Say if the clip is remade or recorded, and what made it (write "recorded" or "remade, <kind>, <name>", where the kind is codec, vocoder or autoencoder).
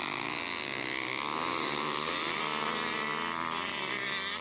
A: recorded